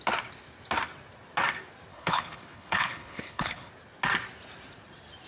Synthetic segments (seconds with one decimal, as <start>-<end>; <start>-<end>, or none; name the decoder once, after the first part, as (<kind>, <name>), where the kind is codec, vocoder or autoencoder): 1.9-3.7 (codec, HILCodec)